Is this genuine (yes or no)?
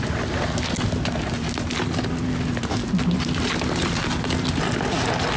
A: yes